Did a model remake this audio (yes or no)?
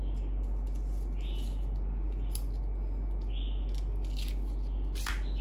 no